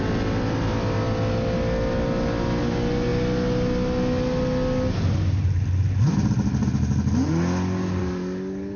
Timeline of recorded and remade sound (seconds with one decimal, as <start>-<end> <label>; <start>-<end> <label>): 0.0-8.0 recorded; 8.0-8.8 remade